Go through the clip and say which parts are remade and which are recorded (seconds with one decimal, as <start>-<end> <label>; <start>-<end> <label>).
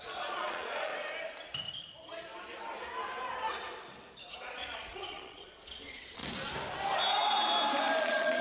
0.0-0.9 remade; 0.9-4.3 recorded; 4.3-6.2 remade; 6.2-8.0 recorded; 8.0-8.4 remade